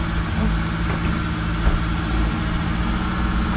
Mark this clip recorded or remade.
recorded